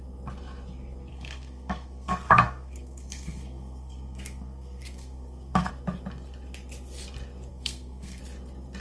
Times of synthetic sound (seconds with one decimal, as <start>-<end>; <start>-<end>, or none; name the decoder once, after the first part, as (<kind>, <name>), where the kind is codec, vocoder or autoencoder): 1.1-5.7 (codec, SNAC); 7.5-8.2